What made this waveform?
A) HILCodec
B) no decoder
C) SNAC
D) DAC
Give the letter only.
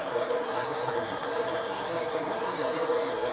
C